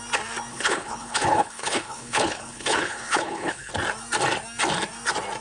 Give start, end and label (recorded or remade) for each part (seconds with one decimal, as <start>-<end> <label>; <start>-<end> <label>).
0.0-0.5 recorded; 0.5-3.7 remade; 3.7-5.4 recorded

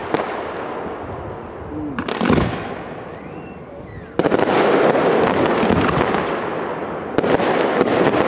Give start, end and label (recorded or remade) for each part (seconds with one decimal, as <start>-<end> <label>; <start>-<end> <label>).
0.0-8.3 recorded

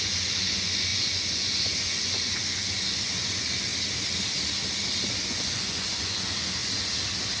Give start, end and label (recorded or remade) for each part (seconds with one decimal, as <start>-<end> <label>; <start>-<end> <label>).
0.0-3.7 remade; 3.7-5.3 recorded; 5.3-6.6 remade; 6.6-7.4 recorded

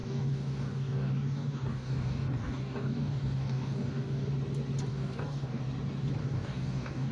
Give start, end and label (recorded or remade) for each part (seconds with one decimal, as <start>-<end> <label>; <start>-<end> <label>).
0.0-4.3 remade; 4.3-4.9 recorded; 4.9-5.6 remade; 5.6-6.2 recorded; 6.2-7.1 remade

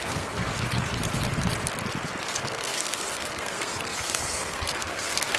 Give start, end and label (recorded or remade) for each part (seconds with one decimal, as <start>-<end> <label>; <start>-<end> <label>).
0.0-0.5 remade; 0.5-2.2 recorded; 2.2-5.4 remade